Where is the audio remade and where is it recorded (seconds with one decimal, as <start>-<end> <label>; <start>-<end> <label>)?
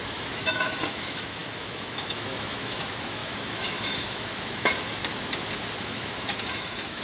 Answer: 0.0-5.0 remade; 5.0-5.8 recorded; 5.8-7.0 remade